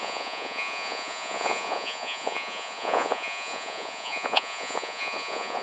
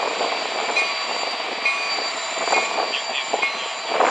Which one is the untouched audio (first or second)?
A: second